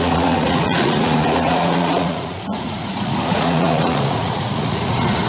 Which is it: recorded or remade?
remade